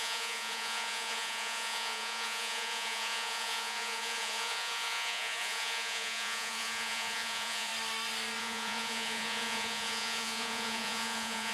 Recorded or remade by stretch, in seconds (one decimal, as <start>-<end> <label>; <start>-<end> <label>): 0.0-7.7 remade; 7.7-8.4 recorded; 8.4-11.5 remade